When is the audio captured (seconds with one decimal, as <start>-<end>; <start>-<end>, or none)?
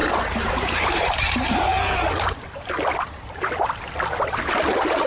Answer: 1.7-5.1